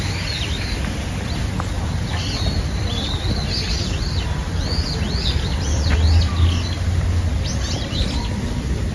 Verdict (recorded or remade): recorded